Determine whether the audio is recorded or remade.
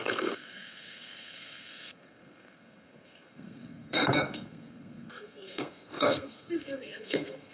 remade